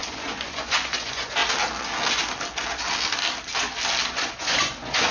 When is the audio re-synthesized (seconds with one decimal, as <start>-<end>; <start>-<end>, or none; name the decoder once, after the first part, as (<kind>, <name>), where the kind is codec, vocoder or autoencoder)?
0.0-1.4 (vocoder, Vocos); 4.1-5.1